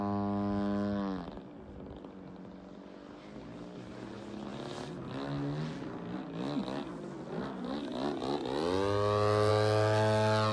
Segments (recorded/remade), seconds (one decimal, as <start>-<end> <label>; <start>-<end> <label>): 0.0-10.5 recorded